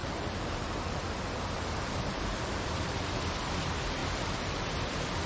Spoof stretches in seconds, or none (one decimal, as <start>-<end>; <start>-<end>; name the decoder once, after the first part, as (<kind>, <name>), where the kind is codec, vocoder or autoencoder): 0.0-3.2 (vocoder, BigVGAN v2); 4.0-4.7